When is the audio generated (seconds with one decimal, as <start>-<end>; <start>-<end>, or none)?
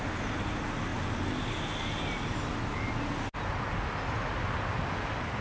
none